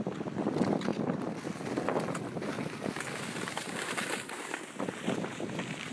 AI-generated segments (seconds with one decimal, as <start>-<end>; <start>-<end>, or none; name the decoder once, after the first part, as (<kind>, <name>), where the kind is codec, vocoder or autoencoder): none